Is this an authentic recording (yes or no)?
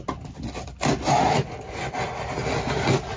yes